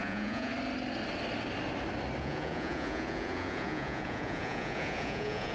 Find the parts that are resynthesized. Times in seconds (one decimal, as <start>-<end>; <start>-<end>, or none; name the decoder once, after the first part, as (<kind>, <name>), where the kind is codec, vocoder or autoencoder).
0.0-0.5 (vocoder, Vocos); 2.2-5.5